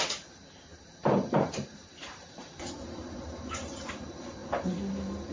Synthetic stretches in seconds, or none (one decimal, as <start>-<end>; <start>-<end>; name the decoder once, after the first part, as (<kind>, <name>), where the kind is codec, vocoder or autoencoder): 0.7-3.9 (vocoder, BigVGAN v2)